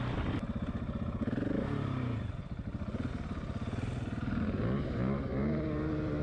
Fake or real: real